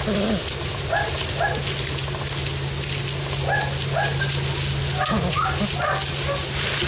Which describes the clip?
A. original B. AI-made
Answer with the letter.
A